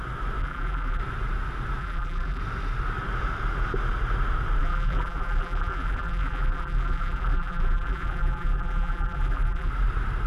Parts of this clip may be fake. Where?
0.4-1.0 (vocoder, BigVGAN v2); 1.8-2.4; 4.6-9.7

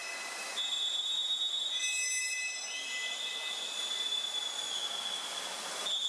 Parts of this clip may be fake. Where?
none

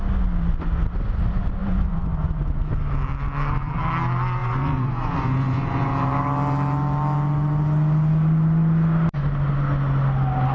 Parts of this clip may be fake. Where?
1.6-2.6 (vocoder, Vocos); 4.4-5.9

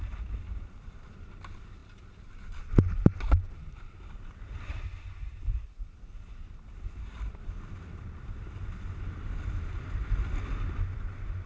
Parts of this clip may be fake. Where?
none

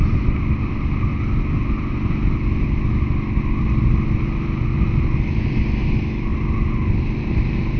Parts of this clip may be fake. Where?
none

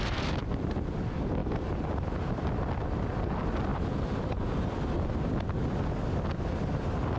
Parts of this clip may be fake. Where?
1.4-2.3 (vocoder, BigVGAN v2); 3.7-5.5

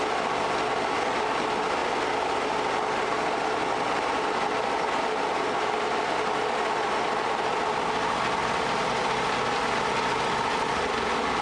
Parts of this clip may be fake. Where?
none